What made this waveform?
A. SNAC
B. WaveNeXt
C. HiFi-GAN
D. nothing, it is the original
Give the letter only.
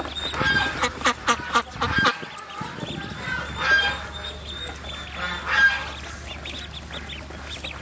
D